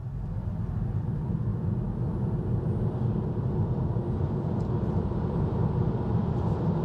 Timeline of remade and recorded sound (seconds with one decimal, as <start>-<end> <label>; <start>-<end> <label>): 0.0-6.8 recorded